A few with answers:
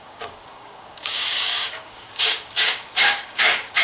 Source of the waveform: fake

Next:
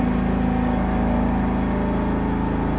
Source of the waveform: real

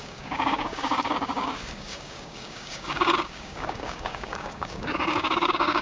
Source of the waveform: fake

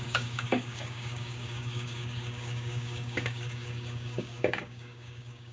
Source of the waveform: fake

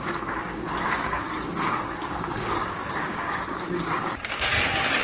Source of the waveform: fake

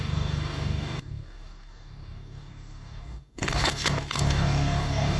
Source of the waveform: fake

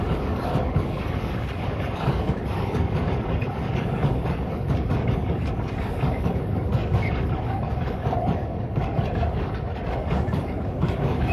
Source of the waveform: fake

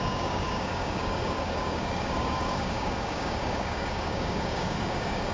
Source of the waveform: fake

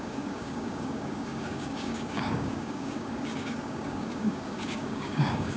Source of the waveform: fake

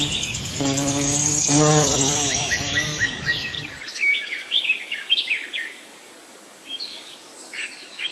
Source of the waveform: fake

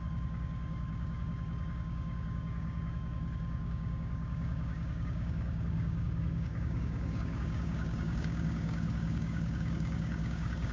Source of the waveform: fake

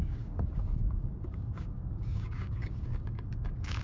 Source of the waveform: fake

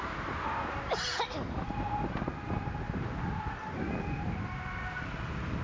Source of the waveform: real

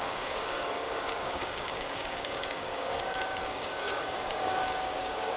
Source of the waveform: fake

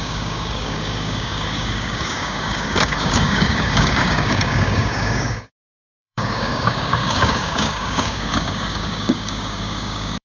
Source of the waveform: fake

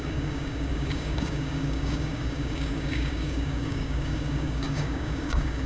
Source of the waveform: fake